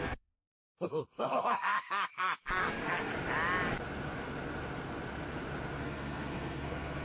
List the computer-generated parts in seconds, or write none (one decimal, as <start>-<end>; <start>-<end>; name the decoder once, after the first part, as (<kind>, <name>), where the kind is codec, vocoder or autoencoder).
0.0-3.1 (codec, SNAC); 5.8-7.0